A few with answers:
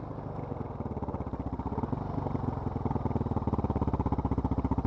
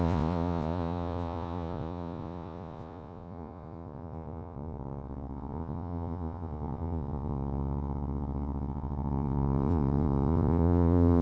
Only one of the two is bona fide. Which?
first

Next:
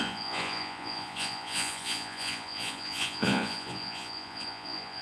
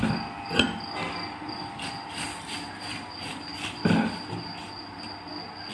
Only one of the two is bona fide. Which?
second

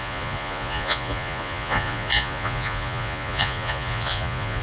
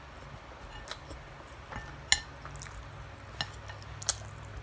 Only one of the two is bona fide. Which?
second